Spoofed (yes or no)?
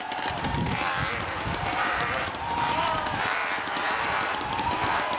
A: yes